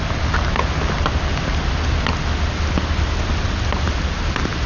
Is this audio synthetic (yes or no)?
no